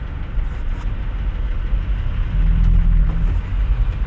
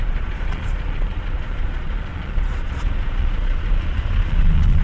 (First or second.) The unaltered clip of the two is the first